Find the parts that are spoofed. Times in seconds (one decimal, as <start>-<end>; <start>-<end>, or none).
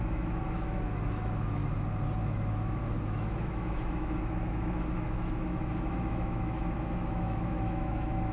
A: 0.0-1.6; 2.5-8.3